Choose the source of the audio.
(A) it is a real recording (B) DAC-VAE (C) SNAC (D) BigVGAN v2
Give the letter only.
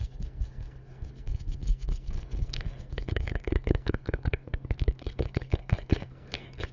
C